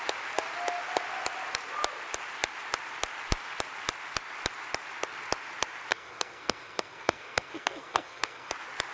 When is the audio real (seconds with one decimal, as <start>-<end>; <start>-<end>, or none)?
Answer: 0.0-5.9; 8.5-8.9